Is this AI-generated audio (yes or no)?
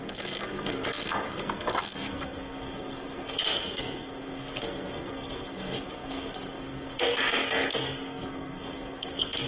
yes